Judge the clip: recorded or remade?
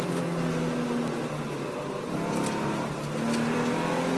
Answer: recorded